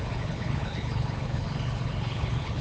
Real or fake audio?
fake